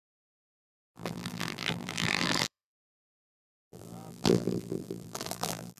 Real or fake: fake